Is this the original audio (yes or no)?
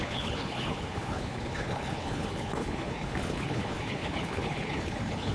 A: no